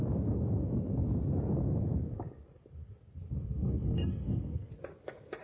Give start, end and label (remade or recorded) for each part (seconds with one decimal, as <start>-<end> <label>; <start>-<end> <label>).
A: 0.0-3.6 recorded; 3.6-4.7 remade; 4.7-5.4 recorded